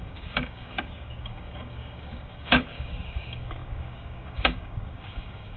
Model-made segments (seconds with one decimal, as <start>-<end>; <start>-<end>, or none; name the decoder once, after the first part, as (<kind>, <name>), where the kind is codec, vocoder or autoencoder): 0.0-5.6 (codec, DAC)

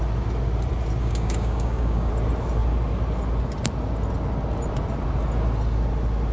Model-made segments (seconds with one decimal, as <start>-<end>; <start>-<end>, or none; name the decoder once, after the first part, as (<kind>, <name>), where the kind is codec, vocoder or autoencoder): 1.0-2.1 (codec, DAC)

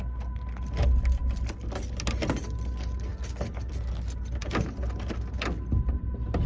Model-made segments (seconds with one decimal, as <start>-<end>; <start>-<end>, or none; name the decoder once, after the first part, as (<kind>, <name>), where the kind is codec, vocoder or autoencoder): none

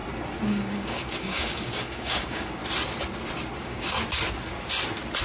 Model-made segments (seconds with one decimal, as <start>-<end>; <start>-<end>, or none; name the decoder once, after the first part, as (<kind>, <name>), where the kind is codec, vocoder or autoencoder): 0.5-2.6 (codec, DAC); 3.6-4.0

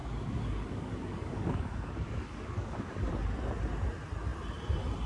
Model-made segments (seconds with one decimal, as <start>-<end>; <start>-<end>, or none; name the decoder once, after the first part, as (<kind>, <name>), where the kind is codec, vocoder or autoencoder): 0.0-3.1 (codec, DAC)

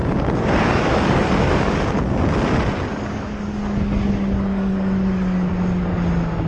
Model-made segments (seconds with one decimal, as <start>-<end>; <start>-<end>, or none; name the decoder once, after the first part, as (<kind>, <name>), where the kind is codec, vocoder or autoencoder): 0.0-2.0 (codec, DAC); 2.9-5.5

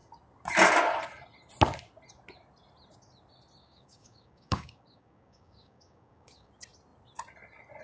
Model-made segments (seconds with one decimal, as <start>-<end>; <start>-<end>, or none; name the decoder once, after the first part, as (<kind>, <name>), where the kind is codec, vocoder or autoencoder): 3.6-6.5 (codec, DAC)